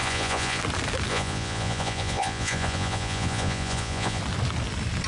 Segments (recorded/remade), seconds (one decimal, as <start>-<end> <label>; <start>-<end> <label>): 0.0-0.6 remade; 0.6-1.1 recorded; 1.1-4.2 remade; 4.2-5.1 recorded